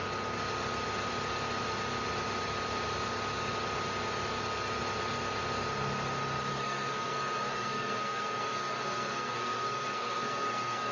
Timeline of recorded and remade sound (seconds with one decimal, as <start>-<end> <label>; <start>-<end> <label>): 0.0-6.5 recorded; 6.5-10.9 remade